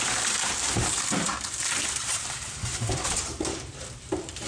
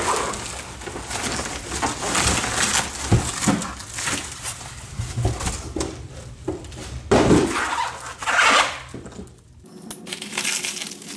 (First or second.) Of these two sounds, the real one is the second